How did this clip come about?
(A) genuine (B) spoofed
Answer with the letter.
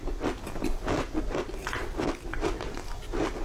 A